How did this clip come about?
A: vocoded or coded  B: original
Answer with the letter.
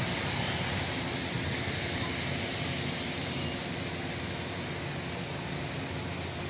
B